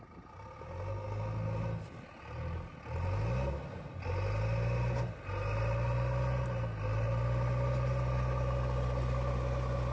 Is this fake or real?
real